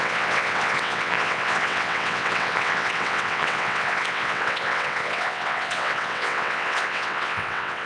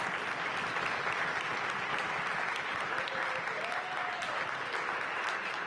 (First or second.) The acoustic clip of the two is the second